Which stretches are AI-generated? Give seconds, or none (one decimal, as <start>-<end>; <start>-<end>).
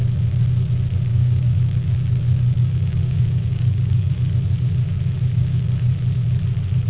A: 1.1-4.1; 5.4-5.9